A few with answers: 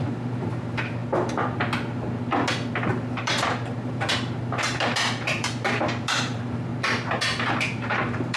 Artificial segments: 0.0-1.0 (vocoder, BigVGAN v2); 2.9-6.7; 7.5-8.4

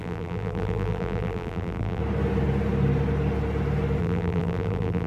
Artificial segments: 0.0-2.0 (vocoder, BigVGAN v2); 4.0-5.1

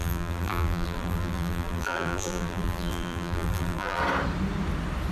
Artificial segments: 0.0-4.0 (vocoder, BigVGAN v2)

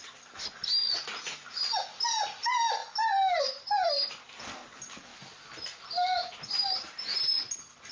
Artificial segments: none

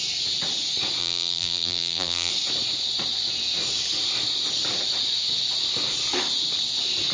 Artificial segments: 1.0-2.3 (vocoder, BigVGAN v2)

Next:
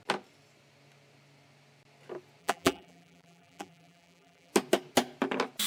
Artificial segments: 2.4-4.5 (vocoder, BigVGAN v2)

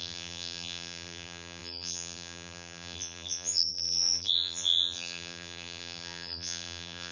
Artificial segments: 0.0-7.1 (vocoder, BigVGAN v2)

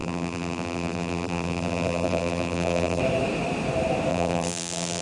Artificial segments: 0.0-3.0 (vocoder, BigVGAN v2); 4.1-5.0